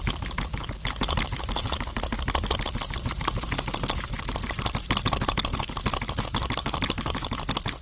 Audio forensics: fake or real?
real